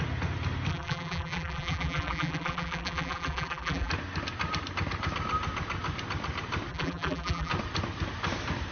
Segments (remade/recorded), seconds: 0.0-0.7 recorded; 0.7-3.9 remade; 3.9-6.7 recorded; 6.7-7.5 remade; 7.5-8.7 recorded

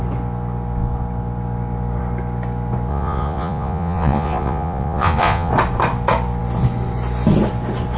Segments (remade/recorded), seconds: 0.0-2.9 recorded; 2.9-5.5 remade; 5.5-8.0 recorded